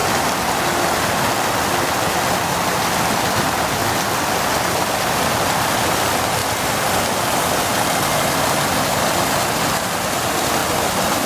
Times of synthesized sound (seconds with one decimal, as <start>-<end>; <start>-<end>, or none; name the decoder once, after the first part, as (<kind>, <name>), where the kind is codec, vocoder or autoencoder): 0.0-0.5 (vocoder, BigVGAN v2); 6.4-7.0; 10.6-11.3